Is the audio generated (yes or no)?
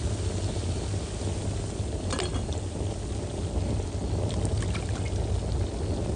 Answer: no